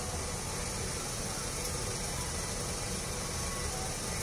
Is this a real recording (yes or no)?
yes